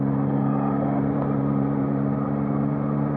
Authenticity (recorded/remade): recorded